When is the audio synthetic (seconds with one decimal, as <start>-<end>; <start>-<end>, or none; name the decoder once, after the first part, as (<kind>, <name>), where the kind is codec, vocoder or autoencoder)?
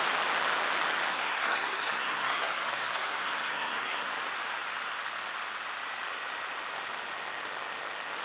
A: 1.1-4.1 (codec, SNAC)